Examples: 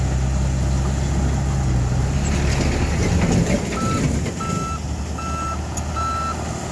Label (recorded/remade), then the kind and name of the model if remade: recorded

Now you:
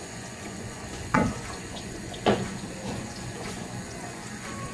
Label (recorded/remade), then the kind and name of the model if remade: remade, vocoder, Vocos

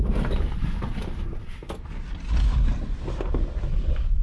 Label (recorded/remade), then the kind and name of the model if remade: recorded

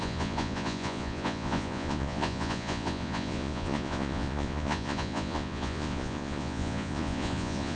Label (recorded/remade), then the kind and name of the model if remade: remade, vocoder, Vocos